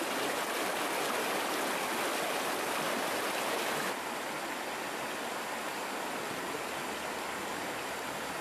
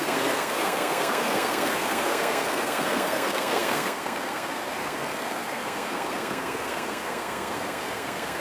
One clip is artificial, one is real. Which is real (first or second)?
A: first